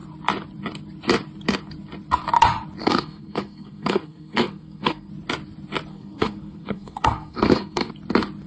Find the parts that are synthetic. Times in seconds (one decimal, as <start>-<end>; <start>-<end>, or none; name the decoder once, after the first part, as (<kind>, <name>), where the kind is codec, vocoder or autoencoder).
2.8-5.1 (codec, SNAC); 5.9-7.9

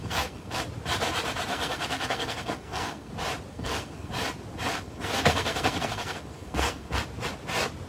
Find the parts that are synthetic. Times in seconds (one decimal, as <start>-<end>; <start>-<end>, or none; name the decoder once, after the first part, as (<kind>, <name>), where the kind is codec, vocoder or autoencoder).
0.0-0.6 (codec, SNAC); 1.5-3.1; 3.5-4.1; 4.7-7.0

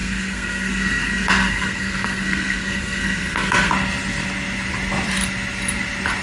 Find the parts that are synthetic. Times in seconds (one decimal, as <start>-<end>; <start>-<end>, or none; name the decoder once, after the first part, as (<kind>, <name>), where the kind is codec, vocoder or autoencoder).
0.0-3.7 (codec, SNAC)

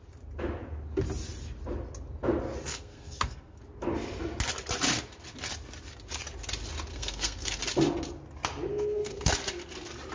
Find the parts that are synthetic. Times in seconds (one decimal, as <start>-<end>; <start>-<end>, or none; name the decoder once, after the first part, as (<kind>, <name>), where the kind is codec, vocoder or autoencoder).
2.7-3.6 (codec, SNAC); 6.9-7.6; 8.7-9.3

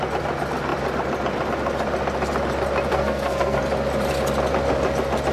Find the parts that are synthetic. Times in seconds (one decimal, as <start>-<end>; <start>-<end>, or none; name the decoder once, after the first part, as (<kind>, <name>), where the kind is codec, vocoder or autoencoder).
2.9-3.6 (codec, SNAC)

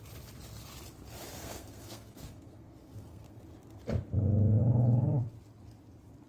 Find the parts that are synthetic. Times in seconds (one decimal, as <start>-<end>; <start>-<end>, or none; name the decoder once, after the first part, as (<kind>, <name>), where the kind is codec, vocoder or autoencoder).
1.4-3.4 (codec, SNAC)